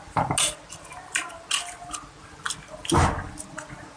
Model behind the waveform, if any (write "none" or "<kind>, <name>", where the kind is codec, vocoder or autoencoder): none